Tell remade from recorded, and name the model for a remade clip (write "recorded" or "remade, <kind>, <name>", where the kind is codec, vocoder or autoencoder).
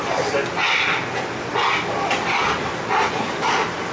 recorded